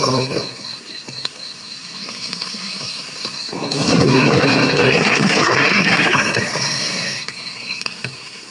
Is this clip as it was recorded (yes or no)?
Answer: no